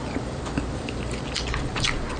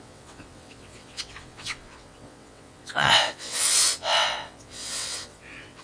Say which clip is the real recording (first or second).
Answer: first